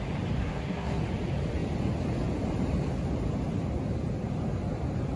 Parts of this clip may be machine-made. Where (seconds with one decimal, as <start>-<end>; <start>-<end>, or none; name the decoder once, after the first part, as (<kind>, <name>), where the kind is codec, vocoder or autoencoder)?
0.4-1.0 (codec, SNAC)